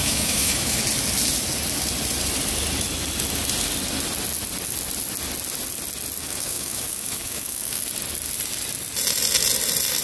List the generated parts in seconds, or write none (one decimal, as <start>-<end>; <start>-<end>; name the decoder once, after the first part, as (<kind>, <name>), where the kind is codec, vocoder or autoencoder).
0.0-0.8 (autoencoder, DAC-VAE); 6.2-7.8